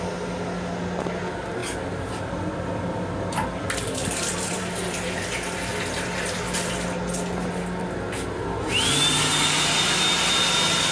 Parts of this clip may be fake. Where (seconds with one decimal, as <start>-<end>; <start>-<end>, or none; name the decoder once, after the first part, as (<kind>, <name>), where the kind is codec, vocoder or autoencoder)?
none